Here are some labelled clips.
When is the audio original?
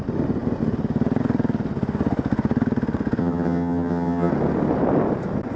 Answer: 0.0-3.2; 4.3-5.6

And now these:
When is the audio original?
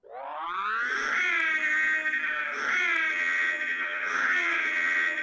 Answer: 0.0-3.1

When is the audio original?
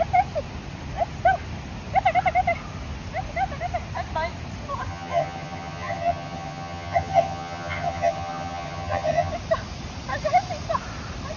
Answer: 0.0-4.9; 9.3-11.4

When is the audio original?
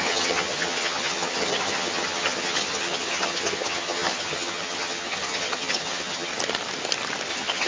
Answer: 6.3-7.3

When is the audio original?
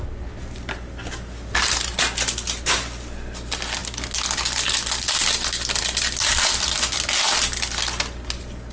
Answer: 0.0-8.7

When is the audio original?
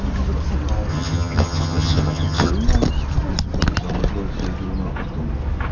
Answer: 0.0-0.9; 2.5-5.7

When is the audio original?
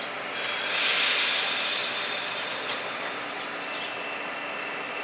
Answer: 0.0-5.0